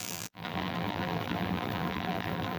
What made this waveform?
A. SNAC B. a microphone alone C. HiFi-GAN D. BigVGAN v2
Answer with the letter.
D